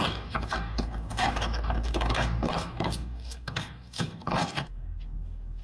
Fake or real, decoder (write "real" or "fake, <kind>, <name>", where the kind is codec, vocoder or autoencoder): fake, codec, DAC